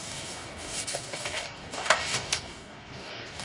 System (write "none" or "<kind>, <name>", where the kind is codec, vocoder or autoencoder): codec, DAC